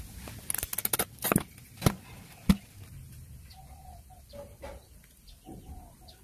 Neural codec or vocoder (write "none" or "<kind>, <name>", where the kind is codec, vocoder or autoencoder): none